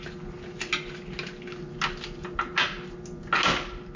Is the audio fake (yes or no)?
no